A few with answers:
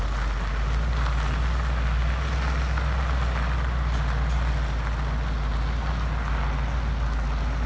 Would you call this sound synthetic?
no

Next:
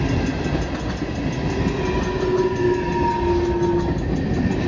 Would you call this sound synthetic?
no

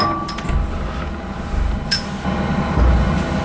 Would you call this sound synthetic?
no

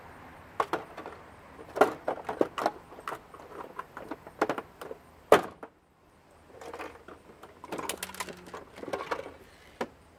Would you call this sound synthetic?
no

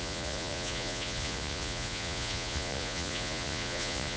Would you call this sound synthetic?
yes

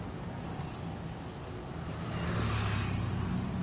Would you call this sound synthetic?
no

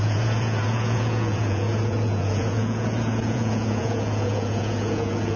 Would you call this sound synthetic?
yes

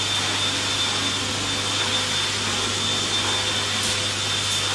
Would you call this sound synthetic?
no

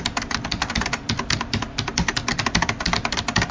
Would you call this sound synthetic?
no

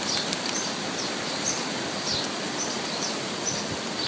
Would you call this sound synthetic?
no